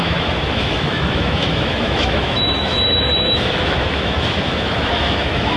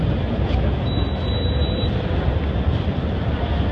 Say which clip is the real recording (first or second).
second